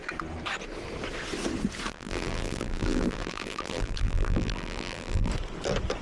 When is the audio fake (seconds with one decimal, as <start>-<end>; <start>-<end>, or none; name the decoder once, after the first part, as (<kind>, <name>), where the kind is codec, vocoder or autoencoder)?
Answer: 1.9-5.3 (vocoder, BigVGAN v2)